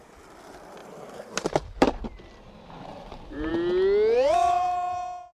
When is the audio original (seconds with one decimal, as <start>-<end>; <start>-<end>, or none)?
0.0-0.8; 2.0-2.9; 3.5-4.4